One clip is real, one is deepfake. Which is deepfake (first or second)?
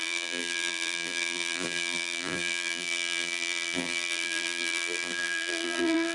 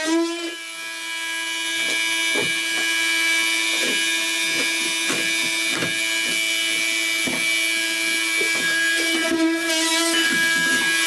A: first